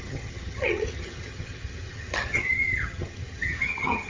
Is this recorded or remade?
remade